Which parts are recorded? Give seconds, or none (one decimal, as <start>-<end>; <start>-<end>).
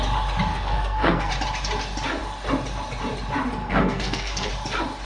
0.0-0.5; 1.3-3.6; 4.5-5.0